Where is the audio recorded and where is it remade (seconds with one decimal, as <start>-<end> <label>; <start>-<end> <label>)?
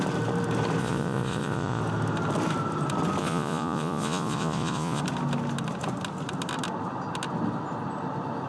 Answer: 0.0-0.8 recorded; 0.8-1.8 remade; 1.8-3.2 recorded; 3.2-5.0 remade; 5.0-8.5 recorded